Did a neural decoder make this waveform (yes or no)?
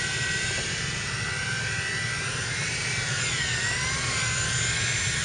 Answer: no